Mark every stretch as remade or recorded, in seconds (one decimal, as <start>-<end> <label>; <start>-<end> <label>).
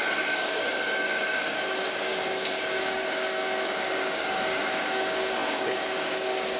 0.0-6.6 remade